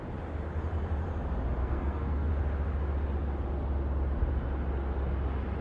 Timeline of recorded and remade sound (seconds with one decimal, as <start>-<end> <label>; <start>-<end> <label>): 0.0-1.6 recorded; 1.6-2.3 remade; 2.3-5.6 recorded